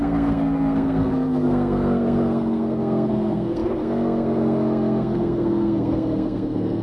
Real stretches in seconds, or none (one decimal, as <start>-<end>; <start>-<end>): none